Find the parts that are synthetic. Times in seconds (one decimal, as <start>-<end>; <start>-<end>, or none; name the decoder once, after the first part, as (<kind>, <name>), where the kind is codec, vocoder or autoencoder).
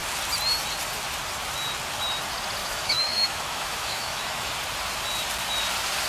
2.6-4.5 (autoencoder, DAC-VAE)